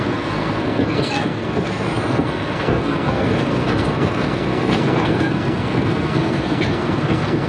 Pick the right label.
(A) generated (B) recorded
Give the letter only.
A